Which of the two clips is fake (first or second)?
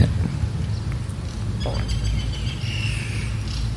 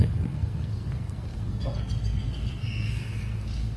second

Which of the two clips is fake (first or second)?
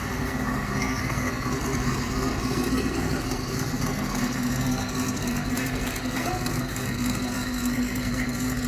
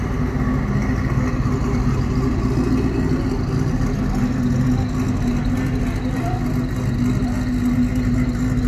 first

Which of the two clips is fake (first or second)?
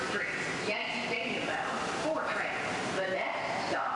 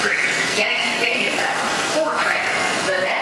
second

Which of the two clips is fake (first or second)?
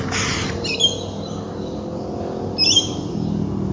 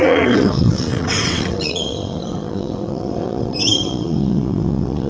second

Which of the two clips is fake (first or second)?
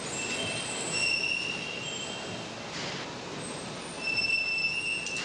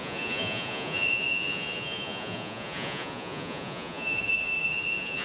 second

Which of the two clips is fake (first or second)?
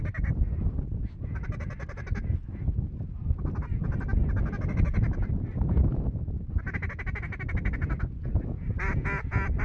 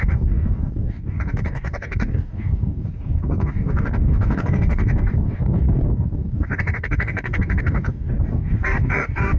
second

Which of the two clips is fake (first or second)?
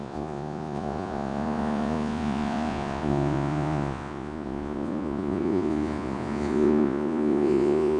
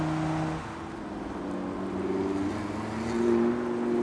first